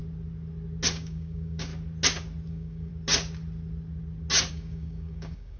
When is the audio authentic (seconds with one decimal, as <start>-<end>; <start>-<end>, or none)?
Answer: 0.0-0.9; 1.7-2.5; 2.9-4.5

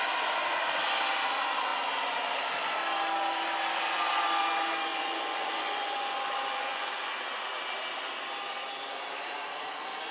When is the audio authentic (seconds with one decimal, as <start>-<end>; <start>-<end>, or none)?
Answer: 0.0-4.9; 7.1-10.1

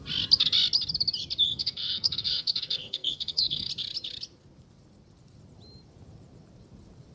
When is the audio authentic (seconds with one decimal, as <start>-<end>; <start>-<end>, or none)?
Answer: 0.0-1.5; 3.7-7.1

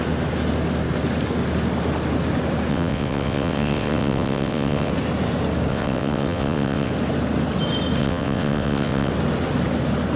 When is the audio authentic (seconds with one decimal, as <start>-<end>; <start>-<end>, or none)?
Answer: 0.0-2.7; 4.9-5.7; 6.9-8.0; 9.1-10.2

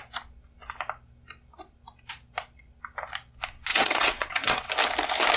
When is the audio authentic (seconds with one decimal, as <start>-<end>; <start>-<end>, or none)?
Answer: 0.0-3.7; 4.7-5.4